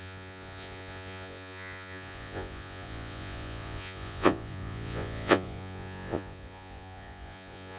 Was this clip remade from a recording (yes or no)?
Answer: yes